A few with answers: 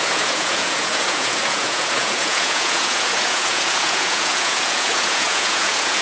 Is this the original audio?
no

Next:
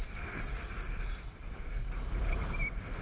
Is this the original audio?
yes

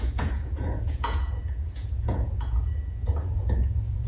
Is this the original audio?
no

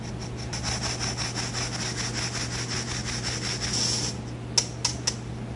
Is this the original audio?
yes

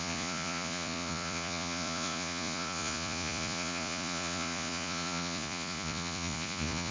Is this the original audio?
no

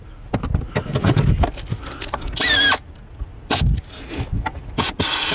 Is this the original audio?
yes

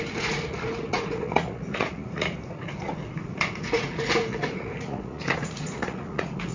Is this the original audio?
no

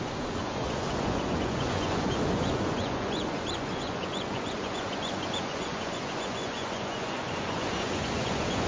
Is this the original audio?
no